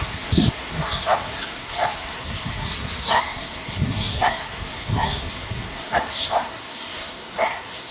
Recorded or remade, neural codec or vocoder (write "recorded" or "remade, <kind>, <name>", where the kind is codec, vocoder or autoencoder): remade, codec, SNAC